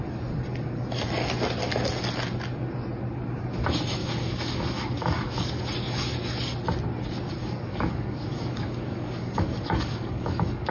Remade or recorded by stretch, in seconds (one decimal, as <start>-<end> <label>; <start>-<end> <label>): 0.0-4.0 recorded; 4.0-5.6 remade; 5.6-7.4 recorded; 7.4-10.7 remade